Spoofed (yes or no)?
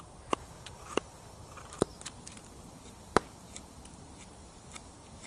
no